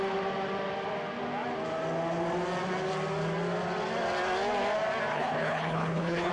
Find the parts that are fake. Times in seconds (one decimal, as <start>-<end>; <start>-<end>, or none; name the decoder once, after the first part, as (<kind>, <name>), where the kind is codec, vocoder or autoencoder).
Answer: 5.1-6.3 (codec, HILCodec)